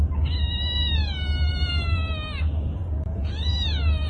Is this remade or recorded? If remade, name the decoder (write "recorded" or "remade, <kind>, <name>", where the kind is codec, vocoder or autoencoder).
recorded